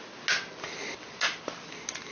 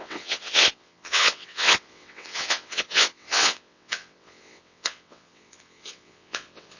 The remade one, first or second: second